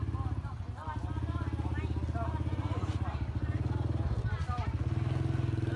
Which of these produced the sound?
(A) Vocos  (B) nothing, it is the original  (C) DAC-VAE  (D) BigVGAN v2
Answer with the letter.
B